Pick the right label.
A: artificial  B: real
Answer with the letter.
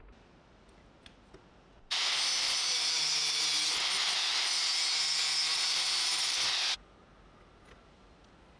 B